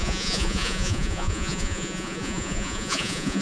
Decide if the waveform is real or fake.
fake